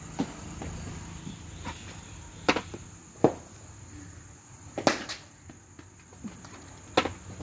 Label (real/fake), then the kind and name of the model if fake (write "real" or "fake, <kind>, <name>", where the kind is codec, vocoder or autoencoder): real